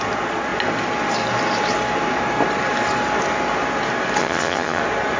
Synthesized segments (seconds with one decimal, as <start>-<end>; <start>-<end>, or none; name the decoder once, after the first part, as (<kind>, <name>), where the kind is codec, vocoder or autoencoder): 4.2-4.8 (vocoder, HiFi-GAN)